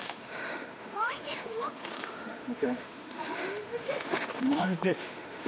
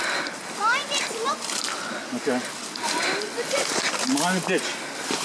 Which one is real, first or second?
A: second